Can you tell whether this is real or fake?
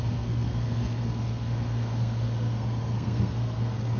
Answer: fake